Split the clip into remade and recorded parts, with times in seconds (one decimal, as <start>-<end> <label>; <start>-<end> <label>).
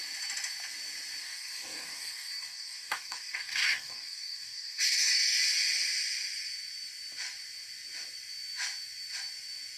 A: 0.0-1.2 recorded; 1.2-5.4 remade; 5.4-9.8 recorded